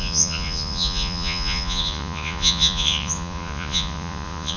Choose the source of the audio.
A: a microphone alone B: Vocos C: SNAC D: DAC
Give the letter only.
B